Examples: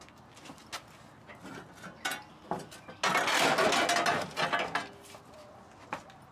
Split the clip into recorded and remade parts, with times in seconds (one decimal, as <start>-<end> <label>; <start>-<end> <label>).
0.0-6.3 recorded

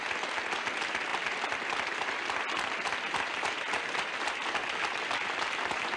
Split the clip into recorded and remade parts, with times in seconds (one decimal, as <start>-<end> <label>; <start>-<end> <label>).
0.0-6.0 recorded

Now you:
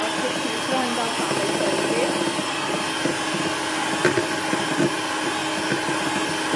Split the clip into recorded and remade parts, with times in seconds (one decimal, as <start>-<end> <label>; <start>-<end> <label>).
0.0-6.6 recorded